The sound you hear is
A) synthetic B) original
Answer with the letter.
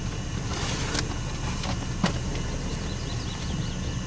B